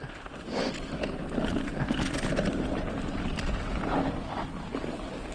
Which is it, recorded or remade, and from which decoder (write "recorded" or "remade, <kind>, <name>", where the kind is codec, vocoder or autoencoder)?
recorded